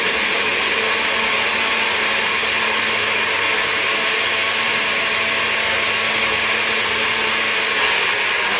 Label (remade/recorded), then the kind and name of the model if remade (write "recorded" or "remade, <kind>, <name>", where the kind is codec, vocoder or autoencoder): recorded